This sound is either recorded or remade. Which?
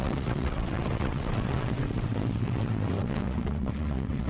remade